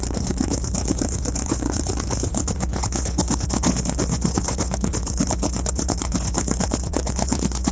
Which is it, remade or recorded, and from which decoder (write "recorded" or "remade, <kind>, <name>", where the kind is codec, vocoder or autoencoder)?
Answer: remade, vocoder, Vocos